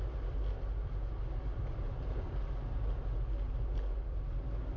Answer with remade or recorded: recorded